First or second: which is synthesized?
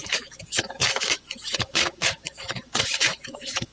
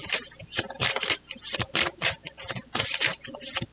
first